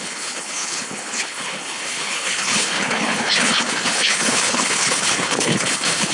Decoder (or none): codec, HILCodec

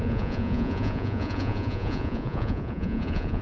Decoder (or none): vocoder, Vocos